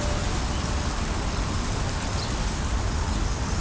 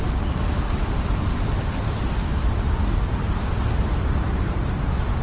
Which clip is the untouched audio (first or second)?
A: first